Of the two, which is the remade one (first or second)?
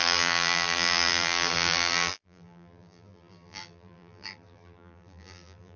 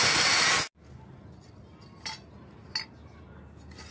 first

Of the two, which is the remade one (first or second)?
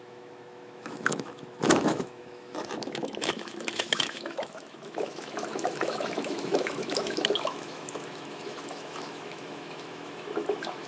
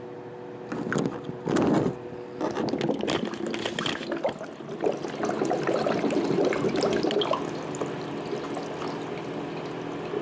first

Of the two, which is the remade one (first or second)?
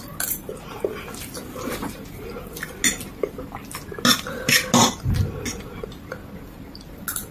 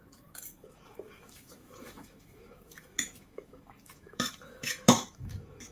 second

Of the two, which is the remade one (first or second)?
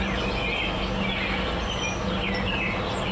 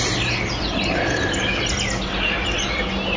second